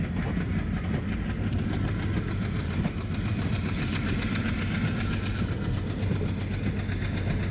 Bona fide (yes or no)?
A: yes